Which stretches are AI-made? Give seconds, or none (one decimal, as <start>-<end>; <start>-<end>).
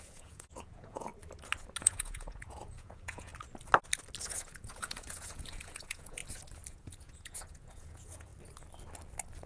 0.0-1.1; 1.8-3.3; 4.2-6.2; 6.7-8.3